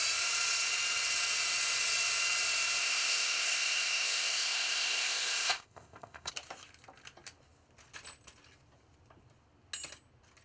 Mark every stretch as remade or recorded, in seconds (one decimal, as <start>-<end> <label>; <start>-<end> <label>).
0.0-2.8 recorded; 2.8-6.3 remade; 6.3-10.4 recorded